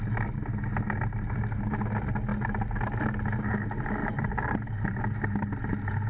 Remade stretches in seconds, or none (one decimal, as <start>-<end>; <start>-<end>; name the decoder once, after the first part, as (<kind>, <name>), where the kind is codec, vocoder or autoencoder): 4.0-5.0 (vocoder, BigVGAN v2)

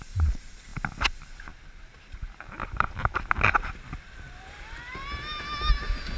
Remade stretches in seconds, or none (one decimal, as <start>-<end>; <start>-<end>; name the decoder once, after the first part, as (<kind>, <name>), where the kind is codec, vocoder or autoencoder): none

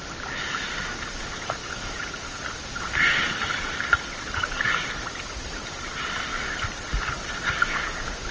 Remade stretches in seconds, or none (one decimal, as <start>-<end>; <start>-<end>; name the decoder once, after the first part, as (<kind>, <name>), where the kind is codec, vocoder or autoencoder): 1.6-5.8 (vocoder, BigVGAN v2)

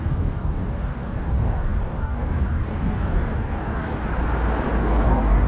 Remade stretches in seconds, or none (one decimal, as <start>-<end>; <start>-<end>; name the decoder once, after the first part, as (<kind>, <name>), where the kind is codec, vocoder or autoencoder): 0.0-4.0 (codec, DAC); 4.8-5.5

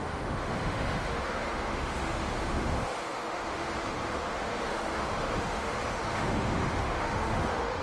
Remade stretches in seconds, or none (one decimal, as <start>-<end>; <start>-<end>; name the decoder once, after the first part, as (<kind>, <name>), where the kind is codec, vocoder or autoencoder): 0.0-7.8 (autoencoder, DAC-VAE)